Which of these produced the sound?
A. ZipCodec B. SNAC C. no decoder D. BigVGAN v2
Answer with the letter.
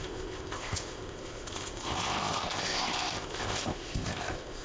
A